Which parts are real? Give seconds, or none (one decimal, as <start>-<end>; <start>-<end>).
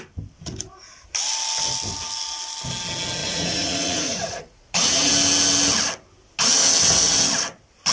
0.0-3.2; 5.1-7.9